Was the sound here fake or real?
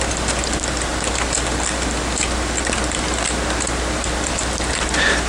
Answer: fake